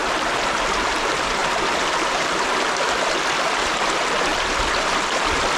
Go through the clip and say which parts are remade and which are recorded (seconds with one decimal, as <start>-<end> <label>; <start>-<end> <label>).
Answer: 0.0-5.6 recorded